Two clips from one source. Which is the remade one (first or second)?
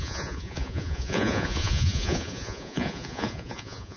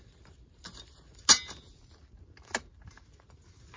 first